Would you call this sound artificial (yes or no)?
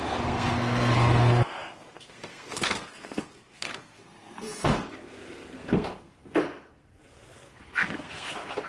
yes